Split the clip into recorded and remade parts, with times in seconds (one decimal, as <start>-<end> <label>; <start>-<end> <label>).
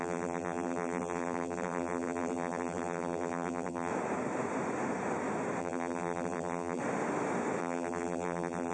0.0-3.9 remade; 3.9-5.6 recorded; 5.6-6.8 remade; 6.8-7.6 recorded; 7.6-8.7 remade